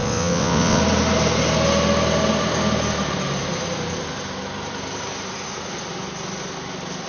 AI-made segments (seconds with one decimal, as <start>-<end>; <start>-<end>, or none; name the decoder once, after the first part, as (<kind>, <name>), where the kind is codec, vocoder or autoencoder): 0.0-0.8 (vocoder, WaveNeXt)